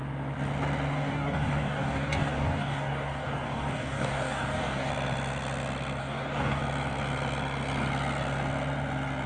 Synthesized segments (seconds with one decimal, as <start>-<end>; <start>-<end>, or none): 0.9-4.9; 6.0-6.6